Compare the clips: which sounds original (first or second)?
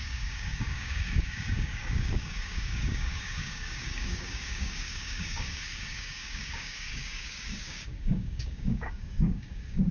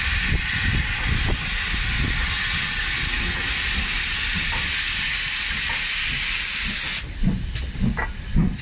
second